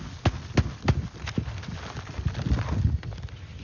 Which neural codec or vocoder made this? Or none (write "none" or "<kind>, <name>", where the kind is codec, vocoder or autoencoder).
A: none